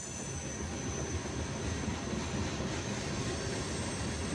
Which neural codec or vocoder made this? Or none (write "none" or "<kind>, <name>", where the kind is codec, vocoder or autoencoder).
none